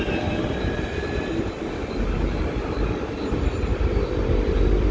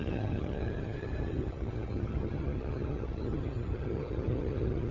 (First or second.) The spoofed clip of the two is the second